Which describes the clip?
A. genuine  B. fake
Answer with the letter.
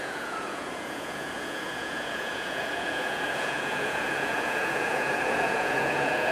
B